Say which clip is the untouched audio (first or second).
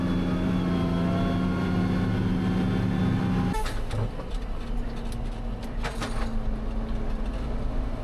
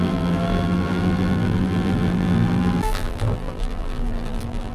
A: first